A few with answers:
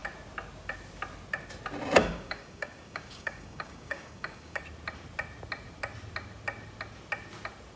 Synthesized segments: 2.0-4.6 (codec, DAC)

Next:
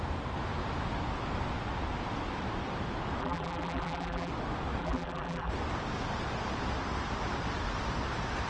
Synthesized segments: 3.2-4.3 (vocoder, BigVGAN v2); 4.8-5.5

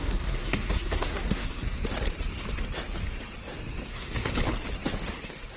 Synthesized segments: 0.0-1.8 (codec, SNAC); 3.9-4.3